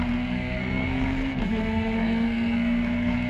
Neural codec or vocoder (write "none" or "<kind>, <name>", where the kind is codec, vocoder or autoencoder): codec, SNAC